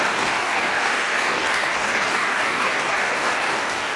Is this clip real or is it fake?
fake